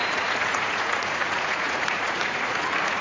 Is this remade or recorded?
remade